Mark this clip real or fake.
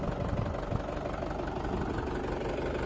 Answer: real